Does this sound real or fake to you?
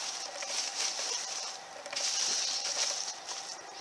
fake